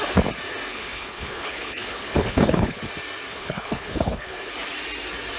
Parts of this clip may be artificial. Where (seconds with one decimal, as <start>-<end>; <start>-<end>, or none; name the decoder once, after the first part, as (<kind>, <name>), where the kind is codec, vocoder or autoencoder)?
0.7-2.8 (codec, HILCodec); 3.3-4.5